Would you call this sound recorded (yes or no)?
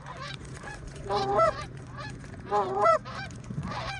no